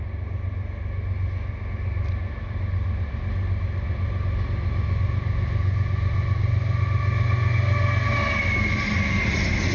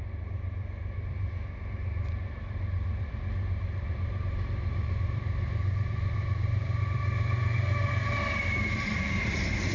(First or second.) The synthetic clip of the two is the second